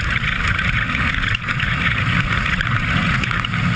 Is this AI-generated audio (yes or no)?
yes